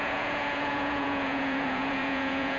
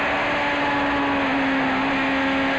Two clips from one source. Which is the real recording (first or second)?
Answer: second